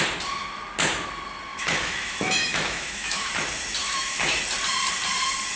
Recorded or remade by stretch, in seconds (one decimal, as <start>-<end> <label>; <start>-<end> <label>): 0.0-1.5 recorded; 1.5-3.3 remade; 3.3-3.8 recorded; 3.8-4.4 remade; 4.4-5.6 recorded